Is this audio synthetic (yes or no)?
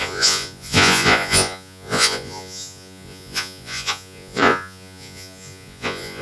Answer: yes